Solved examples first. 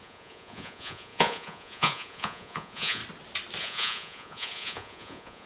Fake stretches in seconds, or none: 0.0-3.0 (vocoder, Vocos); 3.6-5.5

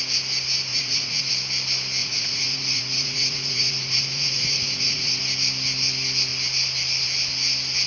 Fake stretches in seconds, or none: 0.7-1.3 (vocoder, Vocos); 2.0-5.2

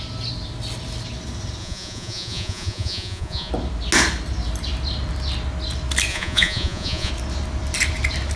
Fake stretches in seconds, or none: 1.6-3.5 (vocoder, Vocos); 6.1-7.1